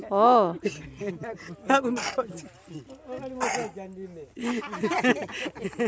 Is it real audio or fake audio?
real